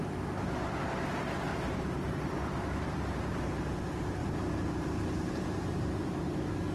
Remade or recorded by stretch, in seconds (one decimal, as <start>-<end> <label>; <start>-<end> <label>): 0.0-1.5 recorded; 1.5-2.1 remade; 2.1-4.2 recorded; 4.2-6.0 remade; 6.0-6.7 recorded

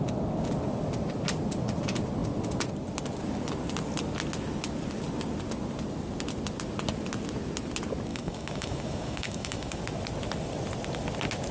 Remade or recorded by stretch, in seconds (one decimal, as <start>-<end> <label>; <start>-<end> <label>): 0.0-8.1 recorded; 8.1-9.8 remade; 9.8-11.5 recorded

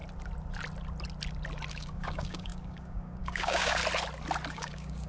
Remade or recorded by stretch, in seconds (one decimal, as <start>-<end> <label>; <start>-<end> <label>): 0.0-1.7 recorded; 1.7-3.8 remade; 3.8-4.5 recorded; 4.5-5.1 remade

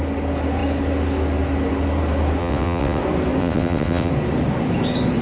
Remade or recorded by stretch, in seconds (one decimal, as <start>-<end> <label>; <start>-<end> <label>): 0.0-2.4 recorded; 2.4-3.0 remade; 3.0-3.4 recorded; 3.4-4.1 remade; 4.1-5.2 recorded

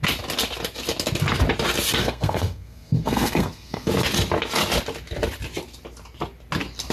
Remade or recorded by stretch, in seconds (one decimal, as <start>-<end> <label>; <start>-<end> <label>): 0.0-2.0 recorded; 2.0-3.9 remade; 3.9-6.9 recorded

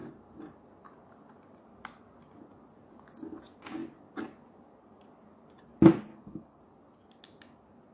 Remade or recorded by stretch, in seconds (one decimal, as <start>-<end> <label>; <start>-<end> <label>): 0.0-6.1 recorded; 6.1-6.6 remade; 6.6-7.9 recorded

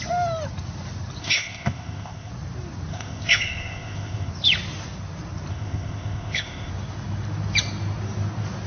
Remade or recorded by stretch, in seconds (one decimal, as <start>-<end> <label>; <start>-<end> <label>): 0.0-1.2 recorded; 1.2-2.3 remade; 2.3-2.9 recorded; 2.9-4.3 remade; 4.3-5.5 recorded; 5.5-6.7 remade; 6.7-8.7 recorded